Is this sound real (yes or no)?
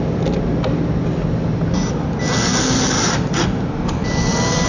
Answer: yes